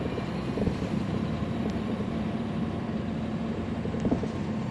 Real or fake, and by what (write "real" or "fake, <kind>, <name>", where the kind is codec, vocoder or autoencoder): real